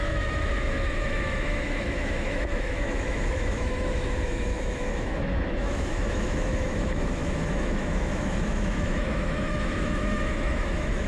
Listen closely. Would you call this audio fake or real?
fake